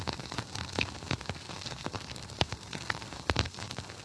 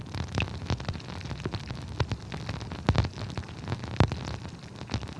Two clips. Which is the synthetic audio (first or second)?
first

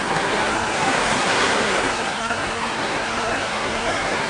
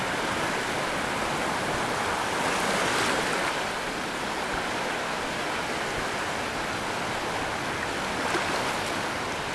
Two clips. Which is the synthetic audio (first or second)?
first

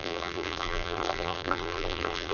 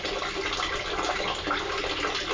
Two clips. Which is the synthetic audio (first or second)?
first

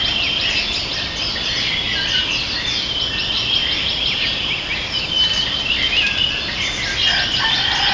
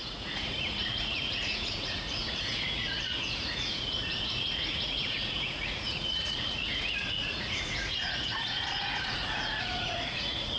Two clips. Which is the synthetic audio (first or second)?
second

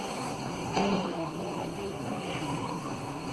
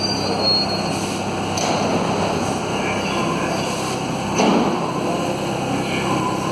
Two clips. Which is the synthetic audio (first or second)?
first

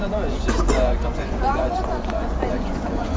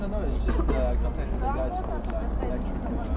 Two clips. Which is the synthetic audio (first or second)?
first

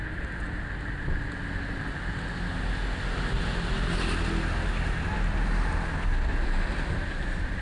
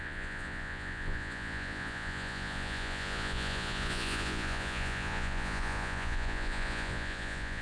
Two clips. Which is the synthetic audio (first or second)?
second